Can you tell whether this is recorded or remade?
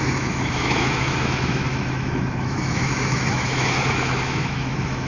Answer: remade